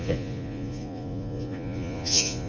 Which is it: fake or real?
fake